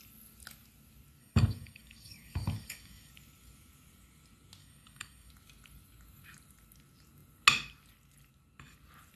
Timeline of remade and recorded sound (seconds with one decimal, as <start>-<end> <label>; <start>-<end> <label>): 0.0-1.2 recorded; 1.2-3.1 remade; 3.1-4.6 recorded; 4.6-5.3 remade; 5.3-9.1 recorded